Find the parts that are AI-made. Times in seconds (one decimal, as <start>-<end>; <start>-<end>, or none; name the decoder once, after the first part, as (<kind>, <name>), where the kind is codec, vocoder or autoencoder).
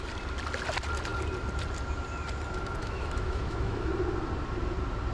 2.8-3.9 (autoencoder, DAC-VAE)